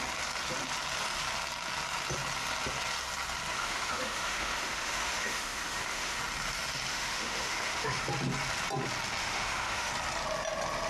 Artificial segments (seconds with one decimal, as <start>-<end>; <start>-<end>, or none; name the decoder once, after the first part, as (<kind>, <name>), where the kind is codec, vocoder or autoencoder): 3.5-6.2 (autoencoder, DAC-VAE); 6.9-8.0; 9.2-9.9